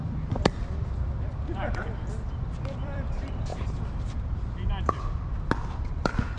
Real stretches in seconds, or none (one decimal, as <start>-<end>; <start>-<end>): 3.5-5.8